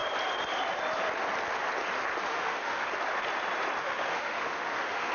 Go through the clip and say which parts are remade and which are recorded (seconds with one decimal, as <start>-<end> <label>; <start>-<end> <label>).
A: 0.0-2.3 recorded; 2.3-2.9 remade; 2.9-3.8 recorded; 3.8-5.1 remade